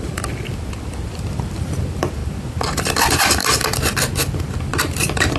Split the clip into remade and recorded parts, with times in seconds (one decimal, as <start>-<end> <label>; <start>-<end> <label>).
0.0-3.4 remade; 3.4-4.1 recorded; 4.1-5.4 remade